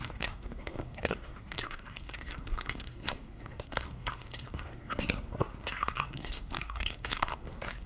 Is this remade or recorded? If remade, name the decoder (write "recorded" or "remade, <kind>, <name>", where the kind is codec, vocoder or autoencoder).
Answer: remade, codec, SNAC